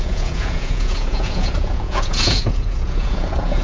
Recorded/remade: remade